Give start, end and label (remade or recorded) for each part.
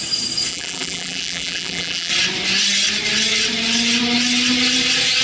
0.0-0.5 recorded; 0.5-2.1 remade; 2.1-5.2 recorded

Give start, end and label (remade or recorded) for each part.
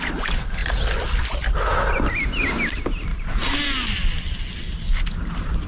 0.0-5.7 recorded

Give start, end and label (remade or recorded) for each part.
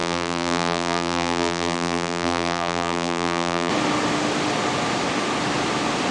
0.0-3.7 remade; 3.7-6.1 recorded